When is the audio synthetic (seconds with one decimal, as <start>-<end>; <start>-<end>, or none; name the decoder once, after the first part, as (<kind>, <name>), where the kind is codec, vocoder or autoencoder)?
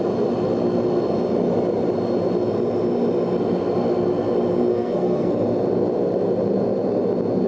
4.7-5.3 (codec, SNAC)